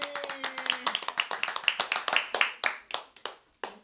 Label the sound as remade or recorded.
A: recorded